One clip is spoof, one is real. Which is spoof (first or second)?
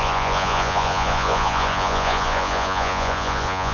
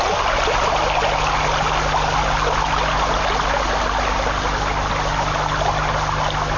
first